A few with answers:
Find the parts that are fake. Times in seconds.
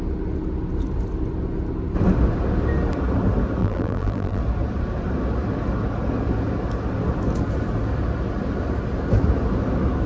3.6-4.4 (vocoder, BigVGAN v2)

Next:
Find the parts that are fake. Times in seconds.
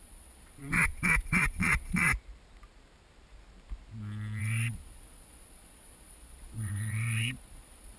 0.0-2.1 (vocoder, Vocos); 4.4-8.0